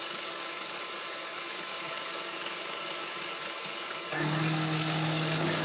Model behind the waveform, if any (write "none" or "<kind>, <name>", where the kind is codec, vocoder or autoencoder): codec, DAC